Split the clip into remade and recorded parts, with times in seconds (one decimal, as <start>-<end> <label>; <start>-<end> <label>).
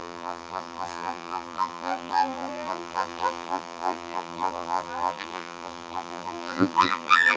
0.0-7.4 remade